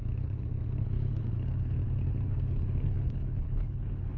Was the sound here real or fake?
fake